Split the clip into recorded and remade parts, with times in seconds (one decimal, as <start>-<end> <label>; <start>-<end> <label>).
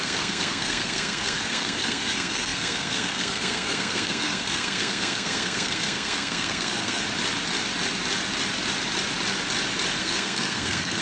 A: 0.0-7.0 remade; 7.0-10.0 recorded; 10.0-11.0 remade